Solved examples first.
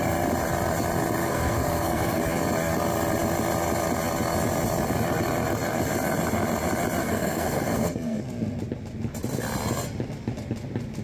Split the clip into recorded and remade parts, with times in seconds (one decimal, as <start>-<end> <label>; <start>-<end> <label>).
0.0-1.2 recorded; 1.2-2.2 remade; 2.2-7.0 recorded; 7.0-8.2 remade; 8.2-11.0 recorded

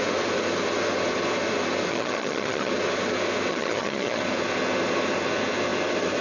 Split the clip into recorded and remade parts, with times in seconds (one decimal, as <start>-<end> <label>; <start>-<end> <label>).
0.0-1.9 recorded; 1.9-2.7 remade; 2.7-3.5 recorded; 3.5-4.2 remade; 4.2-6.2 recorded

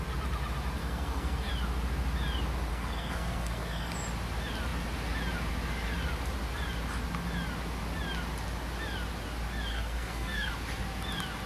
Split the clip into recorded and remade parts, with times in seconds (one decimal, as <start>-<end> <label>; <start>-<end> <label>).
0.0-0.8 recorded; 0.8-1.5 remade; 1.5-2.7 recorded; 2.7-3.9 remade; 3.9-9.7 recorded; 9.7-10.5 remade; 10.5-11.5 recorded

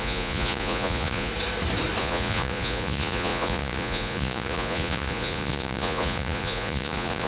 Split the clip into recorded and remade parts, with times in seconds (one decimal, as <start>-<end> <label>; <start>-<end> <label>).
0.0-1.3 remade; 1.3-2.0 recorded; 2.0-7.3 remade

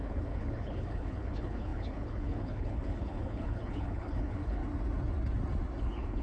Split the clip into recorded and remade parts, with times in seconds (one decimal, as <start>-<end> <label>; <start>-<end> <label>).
0.0-4.6 remade; 4.6-5.8 recorded; 5.8-6.2 remade

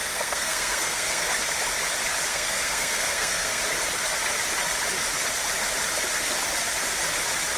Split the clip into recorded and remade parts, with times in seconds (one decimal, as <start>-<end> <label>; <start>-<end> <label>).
0.0-1.3 remade; 1.3-2.3 recorded; 2.3-3.6 remade; 3.6-7.6 recorded